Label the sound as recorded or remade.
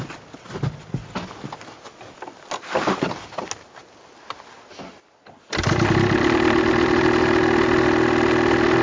recorded